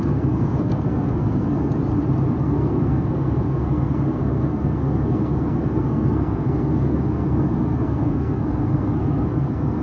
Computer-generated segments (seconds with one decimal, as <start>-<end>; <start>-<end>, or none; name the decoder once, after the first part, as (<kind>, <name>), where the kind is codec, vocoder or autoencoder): 0.0-1.8 (codec, SNAC); 2.4-9.8